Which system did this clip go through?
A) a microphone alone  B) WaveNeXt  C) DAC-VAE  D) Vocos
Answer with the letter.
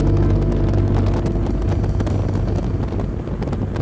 A